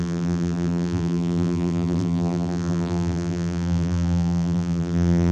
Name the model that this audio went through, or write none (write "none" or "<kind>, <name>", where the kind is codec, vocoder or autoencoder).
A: vocoder, BigVGAN v2